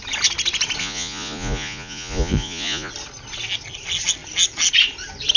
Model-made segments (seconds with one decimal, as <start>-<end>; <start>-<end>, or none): 0.8-2.9